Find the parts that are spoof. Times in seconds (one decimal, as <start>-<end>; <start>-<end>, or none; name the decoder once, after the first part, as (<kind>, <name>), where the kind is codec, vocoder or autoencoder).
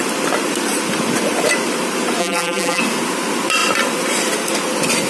2.2-2.8 (vocoder, BigVGAN v2)